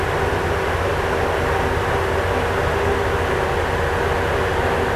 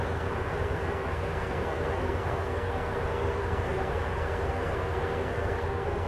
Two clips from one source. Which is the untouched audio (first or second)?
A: first